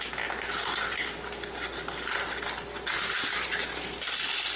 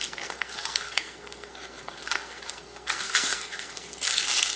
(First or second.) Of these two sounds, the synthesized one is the second